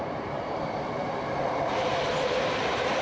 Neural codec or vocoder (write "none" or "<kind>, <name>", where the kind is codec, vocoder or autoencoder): vocoder, BigVGAN v2